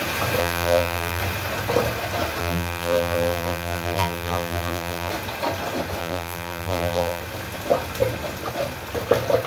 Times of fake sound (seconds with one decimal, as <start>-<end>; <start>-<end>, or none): 0.4-1.2; 2.4-5.1; 6.0-7.2